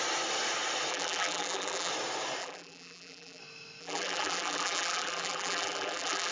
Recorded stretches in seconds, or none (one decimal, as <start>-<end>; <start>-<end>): 0.0-0.9; 1.9-2.4; 3.4-3.8